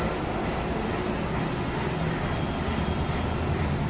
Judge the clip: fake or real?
real